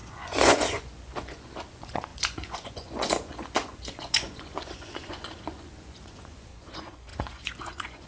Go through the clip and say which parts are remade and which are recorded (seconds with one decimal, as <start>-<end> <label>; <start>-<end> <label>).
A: 0.0-8.1 remade